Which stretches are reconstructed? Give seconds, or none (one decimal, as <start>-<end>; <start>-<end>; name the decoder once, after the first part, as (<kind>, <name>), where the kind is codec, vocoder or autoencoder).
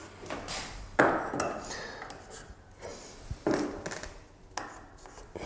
none